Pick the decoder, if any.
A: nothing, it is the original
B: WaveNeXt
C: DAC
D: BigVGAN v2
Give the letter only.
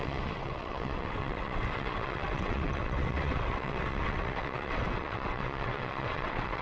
B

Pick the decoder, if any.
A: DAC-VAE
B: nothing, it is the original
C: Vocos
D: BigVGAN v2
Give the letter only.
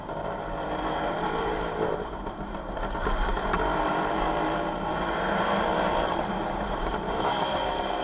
D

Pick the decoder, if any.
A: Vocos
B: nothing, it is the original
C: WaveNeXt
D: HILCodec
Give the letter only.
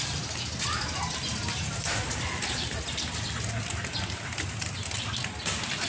B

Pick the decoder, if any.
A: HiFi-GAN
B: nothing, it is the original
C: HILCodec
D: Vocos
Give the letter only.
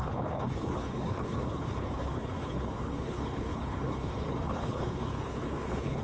C